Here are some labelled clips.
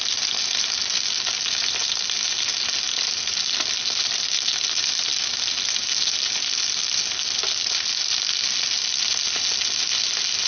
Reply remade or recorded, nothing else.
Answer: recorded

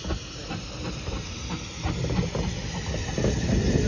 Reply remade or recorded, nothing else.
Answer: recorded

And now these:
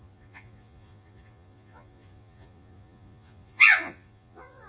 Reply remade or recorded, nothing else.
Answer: remade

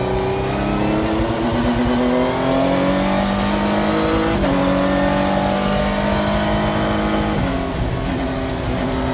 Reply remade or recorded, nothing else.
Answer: recorded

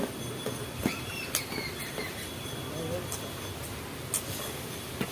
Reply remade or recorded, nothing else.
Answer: recorded